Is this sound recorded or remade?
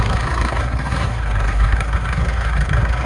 remade